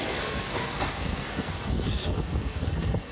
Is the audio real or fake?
fake